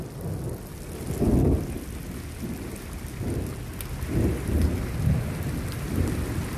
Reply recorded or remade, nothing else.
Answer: recorded